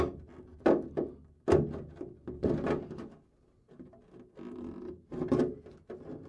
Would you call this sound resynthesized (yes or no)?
no